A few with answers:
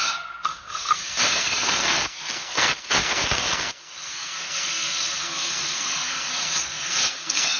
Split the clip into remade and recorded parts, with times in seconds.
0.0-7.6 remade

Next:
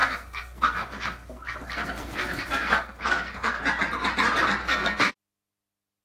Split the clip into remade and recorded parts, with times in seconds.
0.0-3.6 remade; 3.6-4.6 recorded; 4.6-5.1 remade; 5.1-6.0 recorded

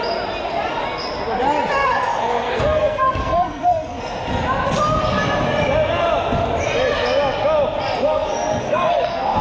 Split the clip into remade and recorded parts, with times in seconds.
0.0-1.8 recorded; 1.8-4.0 remade; 4.0-8.0 recorded; 8.0-9.4 remade

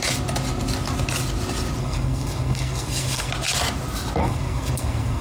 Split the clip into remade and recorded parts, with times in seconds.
0.0-1.8 recorded; 1.8-3.3 remade; 3.3-4.2 recorded; 4.2-5.2 remade

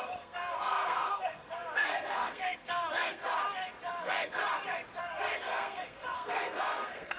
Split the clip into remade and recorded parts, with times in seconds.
0.0-3.2 remade; 3.2-4.0 recorded; 4.0-4.4 remade; 4.4-5.0 recorded; 5.0-7.2 remade

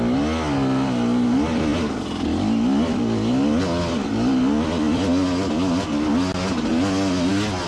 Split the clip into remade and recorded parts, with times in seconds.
0.0-7.7 recorded